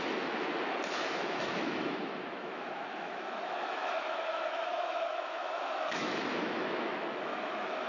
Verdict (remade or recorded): remade